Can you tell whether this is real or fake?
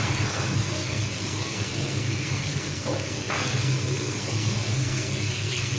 fake